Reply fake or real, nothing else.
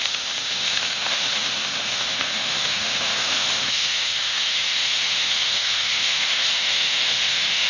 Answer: fake